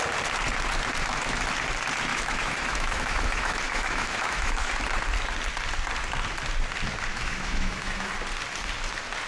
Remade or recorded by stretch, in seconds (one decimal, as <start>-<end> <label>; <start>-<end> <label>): 0.0-2.1 recorded; 2.1-4.7 remade; 4.7-7.1 recorded; 7.1-8.1 remade; 8.1-9.3 recorded